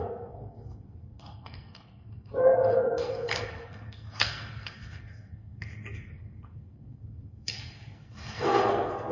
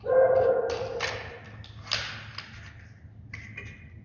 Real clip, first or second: second